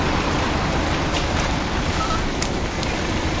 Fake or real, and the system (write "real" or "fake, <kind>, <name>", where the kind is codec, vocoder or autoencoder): real